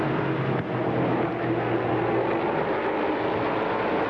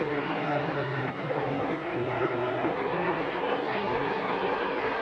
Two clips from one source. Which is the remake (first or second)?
second